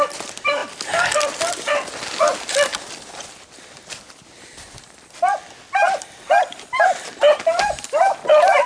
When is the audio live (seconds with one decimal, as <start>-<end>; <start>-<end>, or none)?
0.0-5.8; 7.8-8.7